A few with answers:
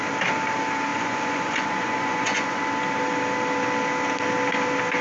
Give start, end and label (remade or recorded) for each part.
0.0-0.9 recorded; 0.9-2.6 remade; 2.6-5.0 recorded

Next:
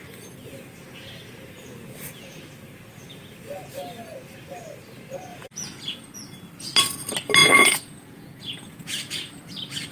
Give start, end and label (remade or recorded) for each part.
0.0-5.3 recorded; 5.3-6.0 remade; 6.0-7.4 recorded; 7.4-9.3 remade; 9.3-9.9 recorded

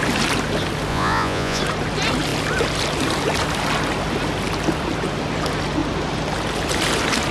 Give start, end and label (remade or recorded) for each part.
0.0-0.9 recorded; 0.9-1.6 remade; 1.6-7.3 recorded

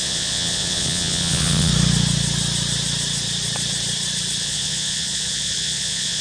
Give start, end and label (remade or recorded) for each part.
0.0-1.7 remade; 1.7-4.4 recorded; 4.4-6.2 remade

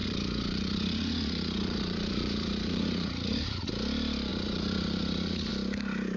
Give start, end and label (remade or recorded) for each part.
0.0-3.7 remade; 3.7-4.3 recorded; 4.3-5.5 remade; 5.5-6.2 recorded

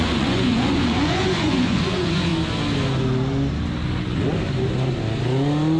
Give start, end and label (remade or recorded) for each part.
0.0-2.3 remade; 2.3-5.8 recorded